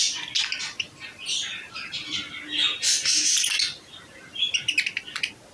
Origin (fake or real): real